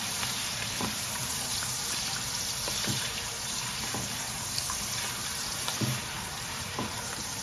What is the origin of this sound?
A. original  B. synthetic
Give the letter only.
B